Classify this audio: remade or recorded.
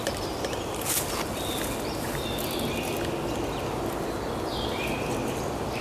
recorded